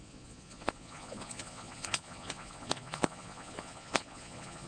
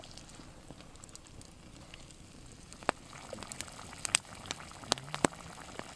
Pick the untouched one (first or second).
second